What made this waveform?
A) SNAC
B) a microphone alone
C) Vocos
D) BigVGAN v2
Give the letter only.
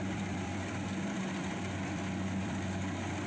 D